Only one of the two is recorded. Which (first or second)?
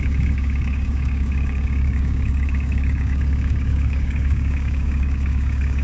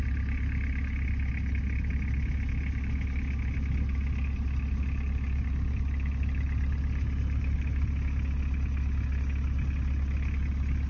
second